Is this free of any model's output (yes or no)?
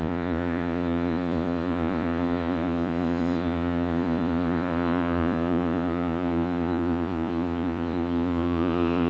no